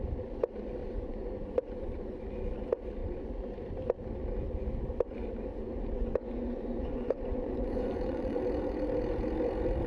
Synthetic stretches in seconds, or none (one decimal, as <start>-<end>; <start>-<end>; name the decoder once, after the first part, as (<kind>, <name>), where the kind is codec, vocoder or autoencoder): 0.8-2.2 (vocoder, Vocos); 5.5-8.4